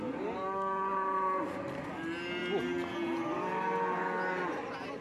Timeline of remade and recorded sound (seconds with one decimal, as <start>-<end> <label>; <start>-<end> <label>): 0.0-5.0 recorded